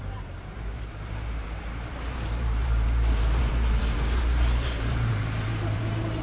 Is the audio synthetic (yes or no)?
yes